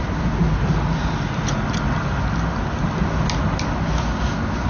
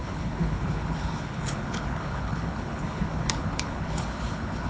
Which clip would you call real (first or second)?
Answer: first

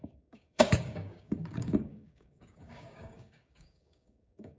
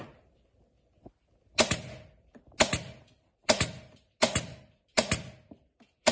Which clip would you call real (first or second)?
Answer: second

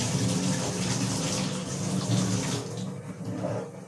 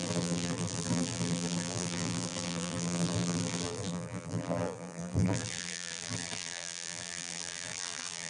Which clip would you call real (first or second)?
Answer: first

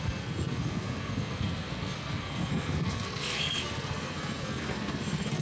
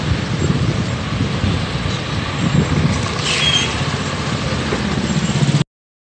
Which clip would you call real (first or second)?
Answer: second